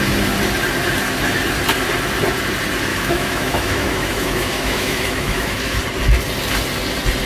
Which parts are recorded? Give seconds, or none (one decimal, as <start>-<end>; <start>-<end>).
0.0-2.9; 5.8-7.3